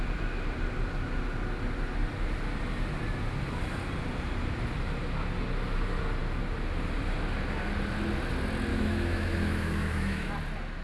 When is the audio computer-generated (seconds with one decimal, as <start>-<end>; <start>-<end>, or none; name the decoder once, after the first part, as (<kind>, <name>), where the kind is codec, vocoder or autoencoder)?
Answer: 8.7-10.3 (autoencoder, DAC-VAE)